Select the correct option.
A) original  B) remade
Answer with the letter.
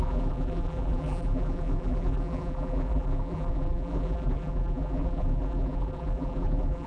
B